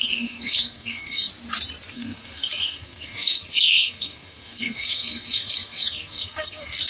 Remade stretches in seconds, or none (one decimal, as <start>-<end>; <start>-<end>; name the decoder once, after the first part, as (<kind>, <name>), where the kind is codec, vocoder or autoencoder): 0.0-1.3 (codec, SNAC); 1.9-6.9